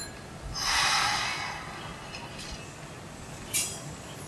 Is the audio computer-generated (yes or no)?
no